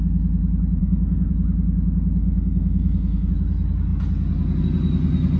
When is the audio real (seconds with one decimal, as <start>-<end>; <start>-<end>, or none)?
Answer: 0.0-0.8; 1.3-2.2; 3.3-5.4